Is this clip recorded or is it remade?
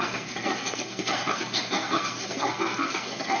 remade